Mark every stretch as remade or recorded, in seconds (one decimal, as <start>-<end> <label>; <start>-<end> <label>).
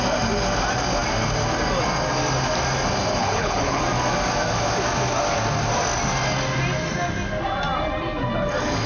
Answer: 0.0-3.2 recorded; 3.2-3.8 remade; 3.8-8.9 recorded